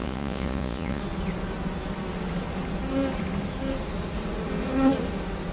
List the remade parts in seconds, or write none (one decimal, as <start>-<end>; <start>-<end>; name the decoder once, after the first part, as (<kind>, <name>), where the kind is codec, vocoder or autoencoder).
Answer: 0.0-1.0 (vocoder, Vocos)